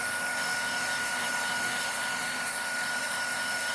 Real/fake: fake